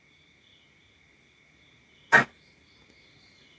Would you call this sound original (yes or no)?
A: yes